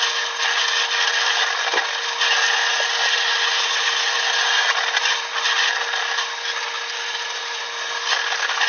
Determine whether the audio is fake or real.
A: real